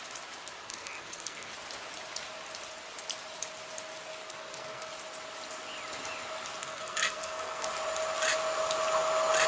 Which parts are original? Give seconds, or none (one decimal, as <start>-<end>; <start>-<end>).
0.0-0.6; 1.5-4.2; 4.9-6.6; 7.7-9.5